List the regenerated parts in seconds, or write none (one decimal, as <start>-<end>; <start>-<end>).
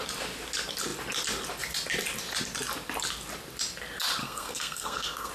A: 4.2-5.3